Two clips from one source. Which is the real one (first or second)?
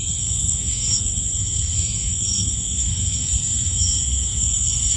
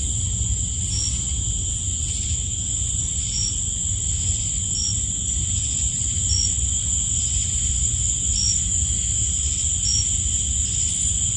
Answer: second